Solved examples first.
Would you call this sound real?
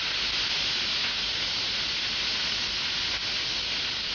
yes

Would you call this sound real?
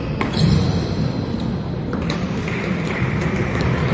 yes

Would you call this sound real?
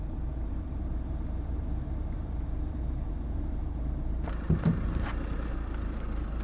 no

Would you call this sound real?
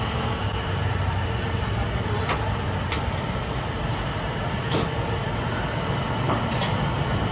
yes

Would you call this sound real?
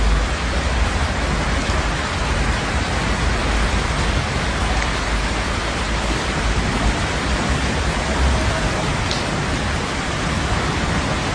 no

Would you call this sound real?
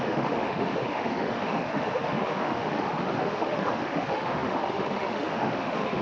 no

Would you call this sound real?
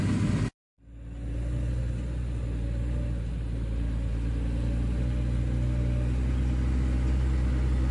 yes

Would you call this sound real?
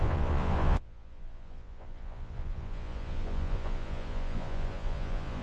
no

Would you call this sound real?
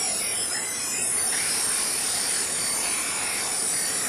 yes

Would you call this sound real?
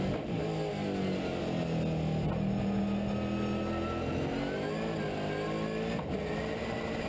yes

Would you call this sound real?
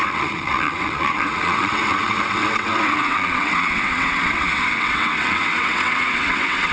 no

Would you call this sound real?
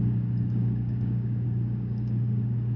no